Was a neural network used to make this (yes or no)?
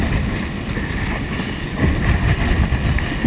no